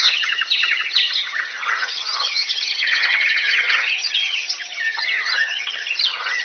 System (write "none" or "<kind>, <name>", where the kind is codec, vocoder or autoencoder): vocoder, HiFi-GAN